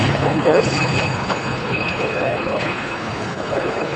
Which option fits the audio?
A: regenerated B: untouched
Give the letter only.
A